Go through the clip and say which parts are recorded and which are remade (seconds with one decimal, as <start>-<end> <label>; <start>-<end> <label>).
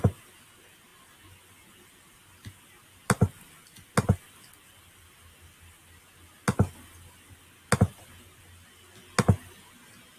0.0-10.2 recorded